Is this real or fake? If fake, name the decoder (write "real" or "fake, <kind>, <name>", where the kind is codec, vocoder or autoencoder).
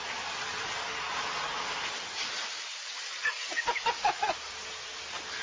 real